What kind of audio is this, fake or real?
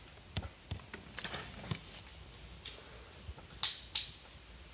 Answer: real